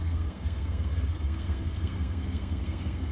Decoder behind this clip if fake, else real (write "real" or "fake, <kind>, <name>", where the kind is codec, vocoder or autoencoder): fake, codec, SNAC